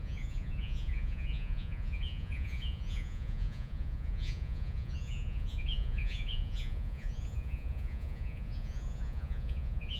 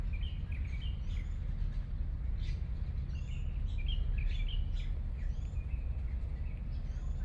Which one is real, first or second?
second